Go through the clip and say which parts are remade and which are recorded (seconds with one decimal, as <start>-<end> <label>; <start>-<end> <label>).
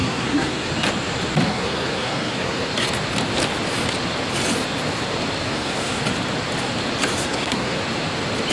0.0-0.7 remade; 0.7-1.5 recorded; 1.5-2.7 remade; 2.7-5.4 recorded; 5.4-6.0 remade; 6.0-7.2 recorded; 7.2-7.8 remade; 7.8-8.5 recorded